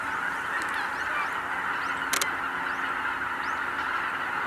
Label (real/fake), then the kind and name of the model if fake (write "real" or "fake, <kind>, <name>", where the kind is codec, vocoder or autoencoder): real